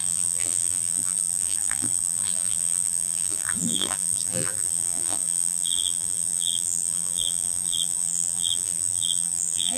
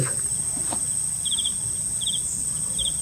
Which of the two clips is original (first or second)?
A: second